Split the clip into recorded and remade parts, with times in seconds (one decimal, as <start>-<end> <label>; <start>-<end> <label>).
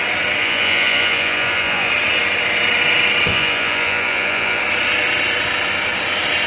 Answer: 0.0-0.4 recorded; 0.4-1.9 remade; 1.9-3.3 recorded; 3.3-4.6 remade; 4.6-6.5 recorded